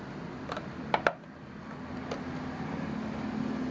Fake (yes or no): no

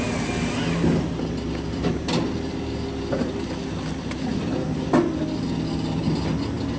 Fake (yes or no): no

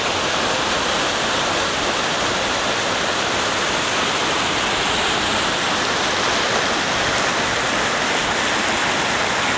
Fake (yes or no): no